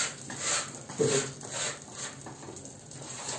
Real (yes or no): yes